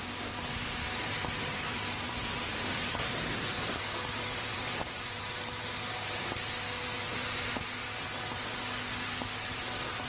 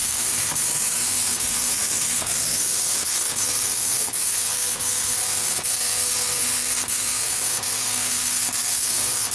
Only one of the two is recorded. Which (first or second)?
first